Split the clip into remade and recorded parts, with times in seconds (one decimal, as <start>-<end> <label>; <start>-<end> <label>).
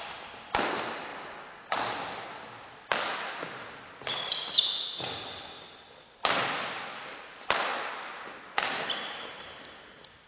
0.0-10.3 recorded